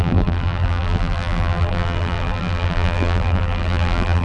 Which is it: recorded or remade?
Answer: remade